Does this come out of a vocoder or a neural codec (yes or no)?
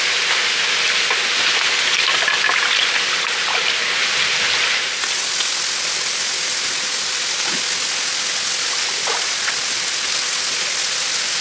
no